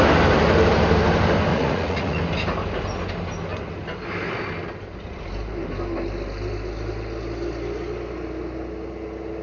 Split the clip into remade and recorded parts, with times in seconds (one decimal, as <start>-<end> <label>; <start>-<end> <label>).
0.0-1.5 recorded; 1.5-2.2 remade; 2.2-9.4 recorded

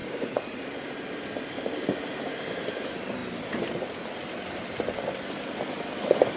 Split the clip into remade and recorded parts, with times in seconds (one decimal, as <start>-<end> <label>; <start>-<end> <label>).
0.0-0.6 remade; 0.6-6.4 recorded

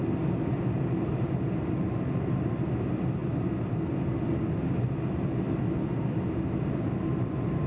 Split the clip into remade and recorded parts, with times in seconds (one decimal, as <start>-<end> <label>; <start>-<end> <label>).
0.0-7.7 recorded

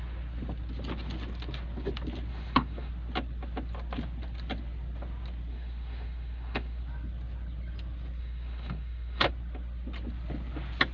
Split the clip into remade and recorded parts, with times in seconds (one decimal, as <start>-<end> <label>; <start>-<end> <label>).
0.0-2.3 recorded; 2.3-2.9 remade; 2.9-5.5 recorded; 5.5-6.8 remade; 6.8-8.2 recorded; 8.2-9.3 remade; 9.3-10.9 recorded

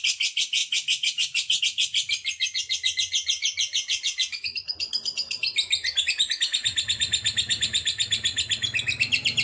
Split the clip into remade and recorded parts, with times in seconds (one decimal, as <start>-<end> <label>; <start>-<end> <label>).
0.0-0.6 recorded; 0.6-1.6 remade; 1.6-9.4 recorded

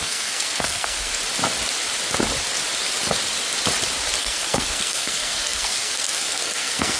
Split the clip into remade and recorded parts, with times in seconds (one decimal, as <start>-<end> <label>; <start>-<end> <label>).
0.0-1.2 remade; 1.2-4.2 recorded; 4.2-7.0 remade